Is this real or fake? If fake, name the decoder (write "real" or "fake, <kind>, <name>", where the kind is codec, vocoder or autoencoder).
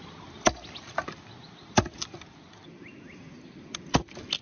real